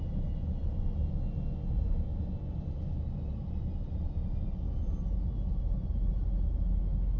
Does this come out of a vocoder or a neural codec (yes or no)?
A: no